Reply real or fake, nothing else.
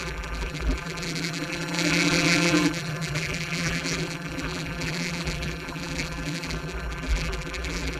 fake